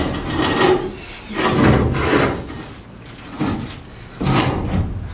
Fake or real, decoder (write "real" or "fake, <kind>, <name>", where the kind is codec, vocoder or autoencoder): real